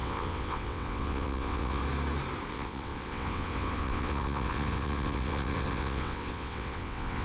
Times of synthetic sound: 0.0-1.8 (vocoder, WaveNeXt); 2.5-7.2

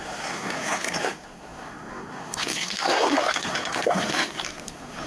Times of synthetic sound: 0.0-5.1 (codec, SNAC)

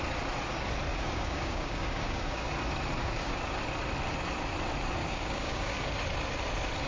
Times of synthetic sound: 0.9-2.5 (codec, DAC); 3.0-3.6; 5.0-5.9

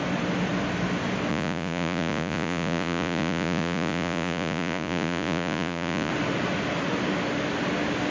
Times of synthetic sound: 1.3-6.1 (vocoder, Vocos)